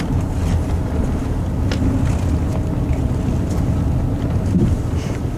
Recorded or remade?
recorded